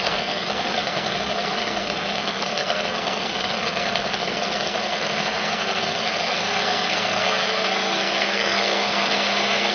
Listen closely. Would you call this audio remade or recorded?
remade